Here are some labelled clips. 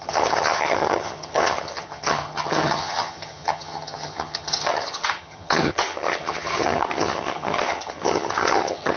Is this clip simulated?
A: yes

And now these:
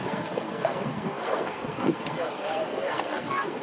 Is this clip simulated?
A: yes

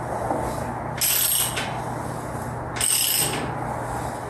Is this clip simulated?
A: no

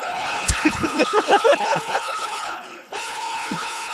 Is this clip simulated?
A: yes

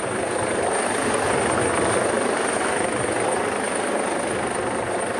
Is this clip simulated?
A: no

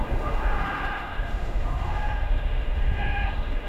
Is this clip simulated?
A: yes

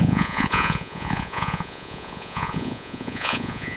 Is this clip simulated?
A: yes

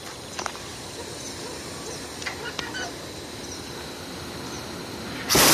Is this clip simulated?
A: no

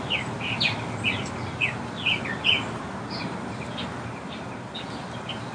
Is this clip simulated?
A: no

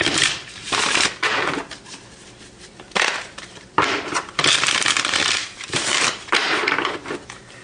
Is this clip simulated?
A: yes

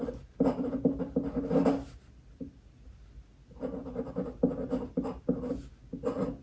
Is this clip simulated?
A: no